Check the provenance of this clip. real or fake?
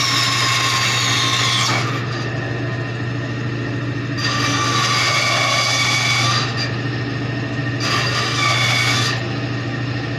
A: real